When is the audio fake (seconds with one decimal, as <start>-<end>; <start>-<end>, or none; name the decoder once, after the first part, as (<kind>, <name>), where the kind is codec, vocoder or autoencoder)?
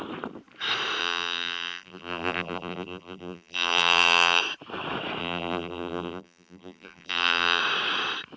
1.0-4.4 (vocoder, BigVGAN v2); 5.2-7.6